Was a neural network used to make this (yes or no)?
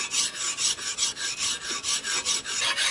no